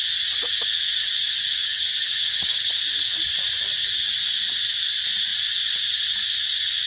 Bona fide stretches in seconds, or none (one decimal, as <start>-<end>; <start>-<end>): 0.0-1.5; 2.8-6.9